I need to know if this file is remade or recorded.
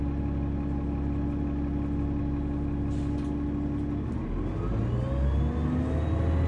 recorded